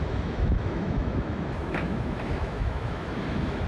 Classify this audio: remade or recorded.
remade